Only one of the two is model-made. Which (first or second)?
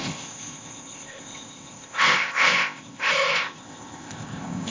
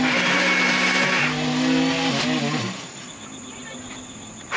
first